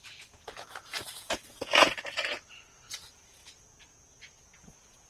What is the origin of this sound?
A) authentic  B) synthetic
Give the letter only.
B